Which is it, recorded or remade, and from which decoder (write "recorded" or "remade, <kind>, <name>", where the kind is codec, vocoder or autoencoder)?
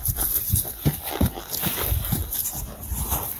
remade, vocoder, BigVGAN v2